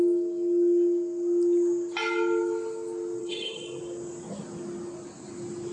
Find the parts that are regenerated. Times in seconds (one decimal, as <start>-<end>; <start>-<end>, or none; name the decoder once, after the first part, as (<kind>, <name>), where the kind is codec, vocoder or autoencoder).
3.2-3.8 (codec, HILCodec)